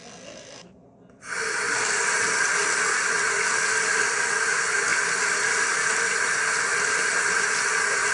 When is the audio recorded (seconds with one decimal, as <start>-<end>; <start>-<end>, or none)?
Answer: 0.0-8.1